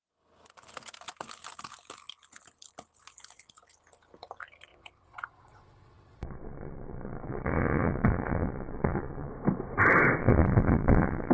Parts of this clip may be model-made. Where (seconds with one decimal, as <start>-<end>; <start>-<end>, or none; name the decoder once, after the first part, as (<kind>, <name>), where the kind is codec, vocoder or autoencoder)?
4.7-9.3 (vocoder, WaveNeXt); 10.2-11.3